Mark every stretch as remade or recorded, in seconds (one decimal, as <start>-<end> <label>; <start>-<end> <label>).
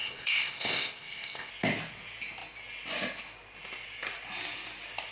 0.0-1.5 remade; 1.5-5.1 recorded